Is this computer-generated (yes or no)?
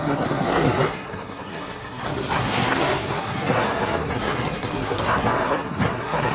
yes